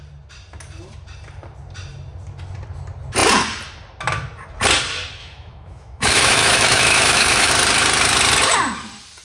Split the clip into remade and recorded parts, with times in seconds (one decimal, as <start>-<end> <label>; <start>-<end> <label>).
0.0-5.2 recorded; 5.2-7.5 remade; 7.5-9.2 recorded